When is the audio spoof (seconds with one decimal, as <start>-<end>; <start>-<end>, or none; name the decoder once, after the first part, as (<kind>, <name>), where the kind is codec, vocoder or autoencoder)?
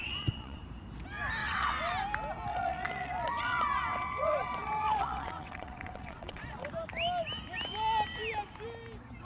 0.0-0.6 (vocoder, WaveNeXt); 1.4-1.9; 2.5-6.7